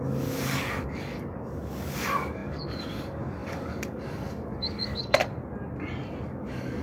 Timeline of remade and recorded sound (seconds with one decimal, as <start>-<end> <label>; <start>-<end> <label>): 0.0-5.2 remade; 5.2-6.2 recorded; 6.2-6.8 remade